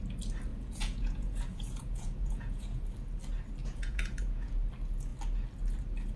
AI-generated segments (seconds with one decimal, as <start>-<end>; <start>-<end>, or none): 0.5-2.8; 3.6-4.5